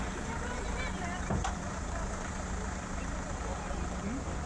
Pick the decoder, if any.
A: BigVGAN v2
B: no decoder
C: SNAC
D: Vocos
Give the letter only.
A